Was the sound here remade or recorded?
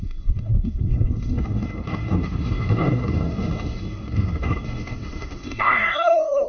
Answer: remade